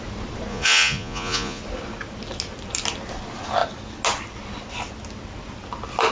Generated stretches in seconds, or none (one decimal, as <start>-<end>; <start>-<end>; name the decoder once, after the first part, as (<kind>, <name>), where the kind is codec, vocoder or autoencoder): 0.5-1.6 (vocoder, Vocos)